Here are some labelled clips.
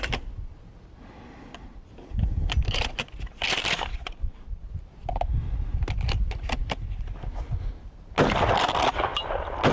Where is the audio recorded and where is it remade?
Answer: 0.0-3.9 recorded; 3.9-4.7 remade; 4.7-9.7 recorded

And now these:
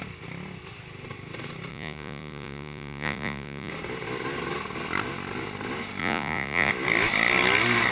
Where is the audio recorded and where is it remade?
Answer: 0.0-1.7 recorded; 1.7-3.7 remade; 3.7-6.0 recorded; 6.0-6.7 remade; 6.7-7.9 recorded

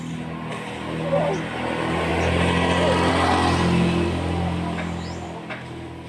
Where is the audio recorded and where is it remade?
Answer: 0.0-6.1 recorded

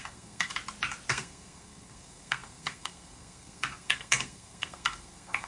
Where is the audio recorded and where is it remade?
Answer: 0.0-0.5 remade; 0.5-1.1 recorded; 1.1-5.5 remade

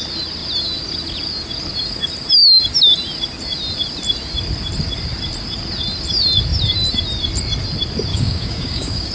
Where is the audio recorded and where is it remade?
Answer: 0.0-8.1 recorded; 8.1-9.1 remade

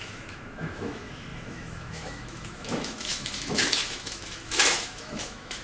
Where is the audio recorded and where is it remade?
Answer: 0.0-5.6 remade

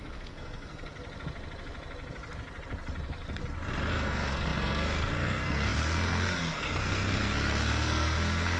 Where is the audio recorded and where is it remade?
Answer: 0.0-0.9 remade; 0.9-3.9 recorded; 3.9-8.6 remade

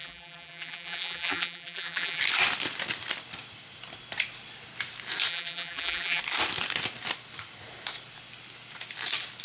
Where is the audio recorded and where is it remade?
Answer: 0.0-2.2 remade; 2.2-5.3 recorded; 5.3-6.2 remade; 6.2-9.4 recorded